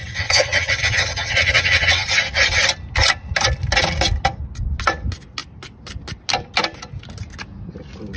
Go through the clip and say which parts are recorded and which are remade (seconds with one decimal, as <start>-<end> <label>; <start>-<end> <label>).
0.0-2.1 remade; 2.1-8.2 recorded

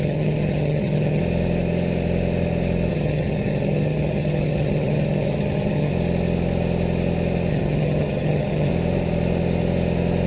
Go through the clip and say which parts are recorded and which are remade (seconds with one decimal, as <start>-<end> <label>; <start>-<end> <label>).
0.0-1.2 remade; 1.2-2.9 recorded; 2.9-5.9 remade; 5.9-7.5 recorded; 7.5-8.7 remade; 8.7-10.3 recorded

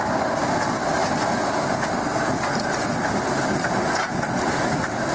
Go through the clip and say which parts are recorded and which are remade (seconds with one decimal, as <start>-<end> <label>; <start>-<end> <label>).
0.0-5.1 recorded

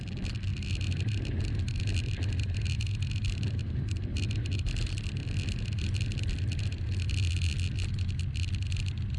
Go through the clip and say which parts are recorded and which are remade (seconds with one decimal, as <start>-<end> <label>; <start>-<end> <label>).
0.0-9.2 recorded

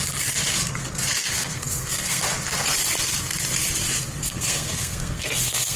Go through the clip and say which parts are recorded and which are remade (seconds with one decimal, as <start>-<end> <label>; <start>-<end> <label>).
0.0-1.2 recorded; 1.2-2.2 remade; 2.2-4.2 recorded; 4.2-5.8 remade

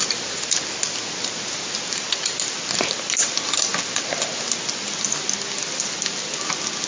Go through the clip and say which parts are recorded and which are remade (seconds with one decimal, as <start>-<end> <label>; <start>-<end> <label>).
0.0-6.9 recorded

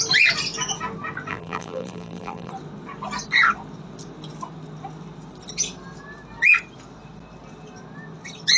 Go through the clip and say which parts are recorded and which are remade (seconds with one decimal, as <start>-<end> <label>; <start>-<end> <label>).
0.0-1.3 recorded; 1.3-2.5 remade; 2.5-8.6 recorded